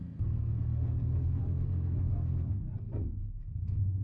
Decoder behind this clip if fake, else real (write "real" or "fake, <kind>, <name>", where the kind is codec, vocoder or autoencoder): fake, codec, SNAC